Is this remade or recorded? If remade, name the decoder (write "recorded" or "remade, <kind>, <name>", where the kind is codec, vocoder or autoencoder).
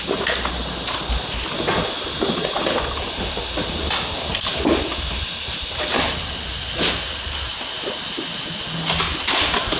recorded